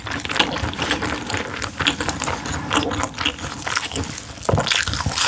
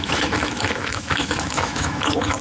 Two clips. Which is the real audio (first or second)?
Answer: first